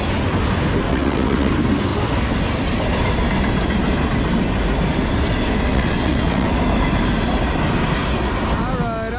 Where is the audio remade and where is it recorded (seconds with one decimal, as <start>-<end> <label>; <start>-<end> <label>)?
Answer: 0.0-0.9 recorded; 0.9-1.5 remade; 1.5-5.7 recorded; 5.7-6.5 remade; 6.5-9.2 recorded